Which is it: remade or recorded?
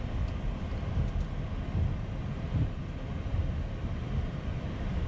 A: recorded